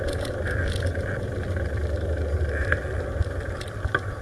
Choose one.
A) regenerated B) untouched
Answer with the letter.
B